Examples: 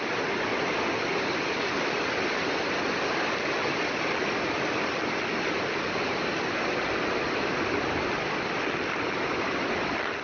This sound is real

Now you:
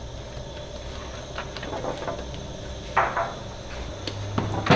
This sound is real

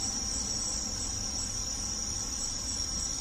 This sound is real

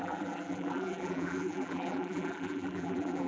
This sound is fake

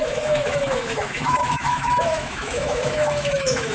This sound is fake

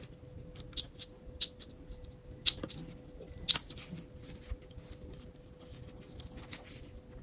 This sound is real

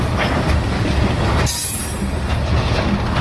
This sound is real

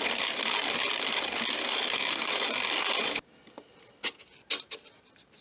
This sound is real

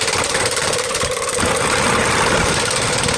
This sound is fake